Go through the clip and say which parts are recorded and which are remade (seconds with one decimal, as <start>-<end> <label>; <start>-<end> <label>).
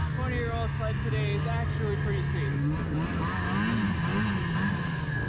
0.0-5.3 recorded